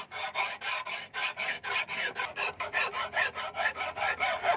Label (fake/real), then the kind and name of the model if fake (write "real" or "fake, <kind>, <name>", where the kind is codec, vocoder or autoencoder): real